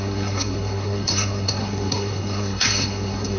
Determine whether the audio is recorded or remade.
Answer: remade